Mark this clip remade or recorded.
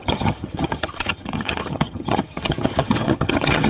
remade